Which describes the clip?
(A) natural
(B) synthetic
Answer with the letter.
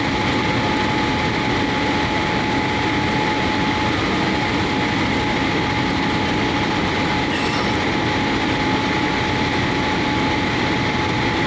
A